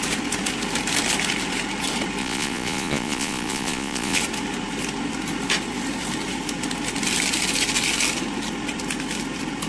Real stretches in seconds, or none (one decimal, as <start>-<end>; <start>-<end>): 0.0-2.2; 4.2-9.7